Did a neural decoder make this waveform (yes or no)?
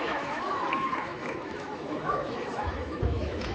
yes